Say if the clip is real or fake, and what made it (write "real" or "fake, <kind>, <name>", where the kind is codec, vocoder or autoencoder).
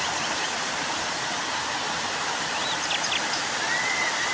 real